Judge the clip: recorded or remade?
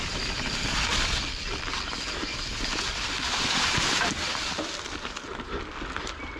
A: remade